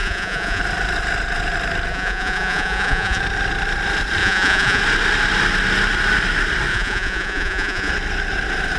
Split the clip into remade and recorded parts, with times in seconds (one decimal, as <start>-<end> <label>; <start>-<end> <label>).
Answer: 0.0-0.6 remade; 0.6-1.9 recorded; 1.9-3.2 remade; 3.2-4.2 recorded; 4.2-4.8 remade; 4.8-6.7 recorded; 6.7-7.9 remade; 7.9-8.8 recorded